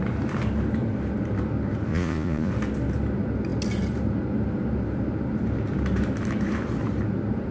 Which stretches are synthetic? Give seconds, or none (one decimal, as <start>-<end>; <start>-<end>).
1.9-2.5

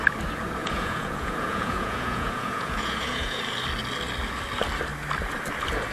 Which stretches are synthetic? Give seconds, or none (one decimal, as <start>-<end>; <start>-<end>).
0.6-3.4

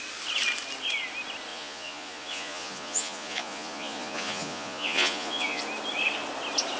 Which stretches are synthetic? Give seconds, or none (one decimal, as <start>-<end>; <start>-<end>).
1.5-5.6